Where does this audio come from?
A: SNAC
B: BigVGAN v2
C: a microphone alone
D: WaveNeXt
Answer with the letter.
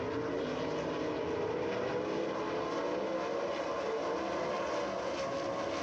C